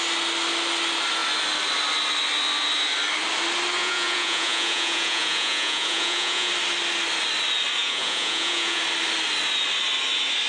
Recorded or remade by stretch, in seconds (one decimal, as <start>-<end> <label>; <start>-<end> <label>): 0.0-3.8 recorded; 3.8-6.5 remade; 6.5-7.8 recorded; 7.8-8.8 remade; 8.8-10.5 recorded